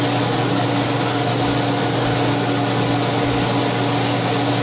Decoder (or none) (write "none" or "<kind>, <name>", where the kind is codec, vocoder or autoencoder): none